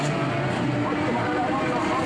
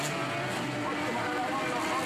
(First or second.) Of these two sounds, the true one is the second